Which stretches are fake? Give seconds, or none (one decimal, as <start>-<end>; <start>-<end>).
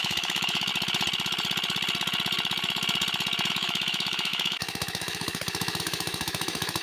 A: 0.0-0.7; 3.5-6.8